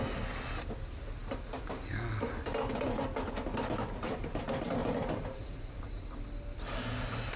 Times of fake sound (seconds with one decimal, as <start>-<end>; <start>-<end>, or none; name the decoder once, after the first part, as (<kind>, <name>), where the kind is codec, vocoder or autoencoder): 4.8-6.0 (vocoder, BigVGAN v2)